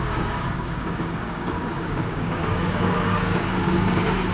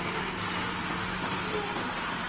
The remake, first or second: first